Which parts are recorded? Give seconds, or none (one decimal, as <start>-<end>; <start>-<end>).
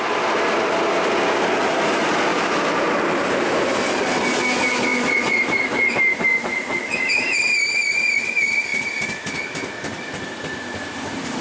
0.0-2.3; 4.4-4.9; 6.8-11.4